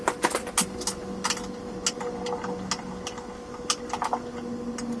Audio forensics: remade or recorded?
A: recorded